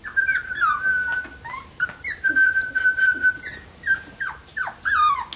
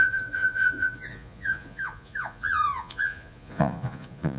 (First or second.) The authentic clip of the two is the first